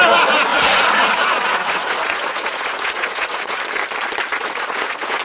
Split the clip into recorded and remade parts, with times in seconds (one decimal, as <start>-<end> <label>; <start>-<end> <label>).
0.0-0.5 recorded; 0.5-3.6 remade; 3.6-4.3 recorded; 4.3-5.2 remade